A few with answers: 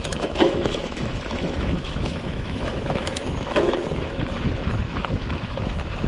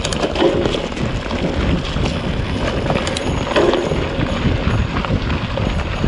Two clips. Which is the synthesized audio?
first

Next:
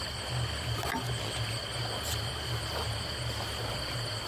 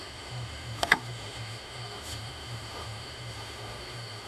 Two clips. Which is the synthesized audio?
second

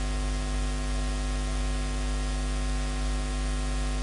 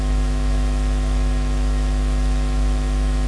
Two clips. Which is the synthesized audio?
second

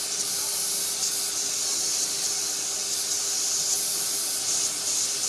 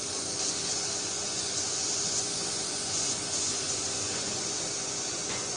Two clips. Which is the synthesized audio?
second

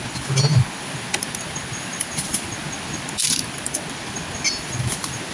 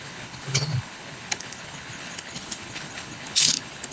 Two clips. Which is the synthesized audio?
second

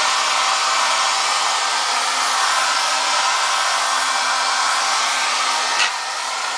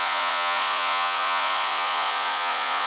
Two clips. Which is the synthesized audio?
second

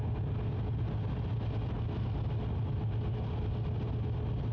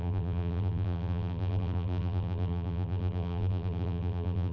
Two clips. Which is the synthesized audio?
second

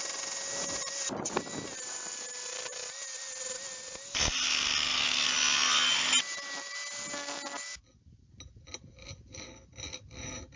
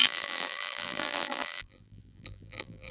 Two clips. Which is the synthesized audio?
second